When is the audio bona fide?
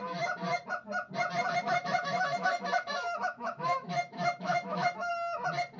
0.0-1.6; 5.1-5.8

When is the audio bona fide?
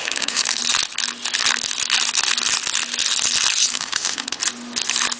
0.6-3.7; 4.4-5.2